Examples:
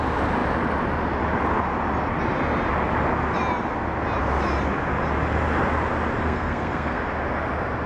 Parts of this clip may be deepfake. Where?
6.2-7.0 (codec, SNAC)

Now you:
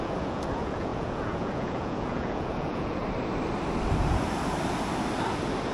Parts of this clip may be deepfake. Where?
0.0-3.0 (vocoder, Vocos)

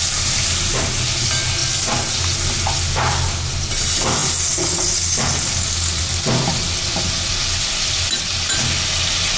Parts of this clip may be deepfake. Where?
none

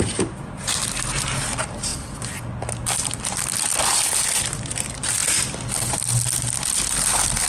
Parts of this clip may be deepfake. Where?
5.2-5.8 (vocoder, BigVGAN v2)

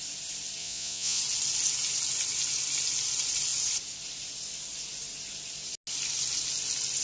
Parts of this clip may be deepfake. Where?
0.6-1.2 (vocoder, Vocos)

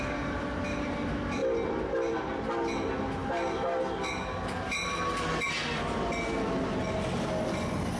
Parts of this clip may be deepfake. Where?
none